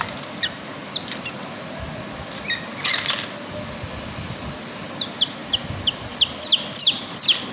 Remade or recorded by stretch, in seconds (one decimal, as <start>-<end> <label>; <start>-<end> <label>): 0.0-7.5 recorded